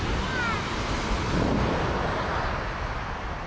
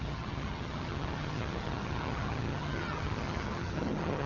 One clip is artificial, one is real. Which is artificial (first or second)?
second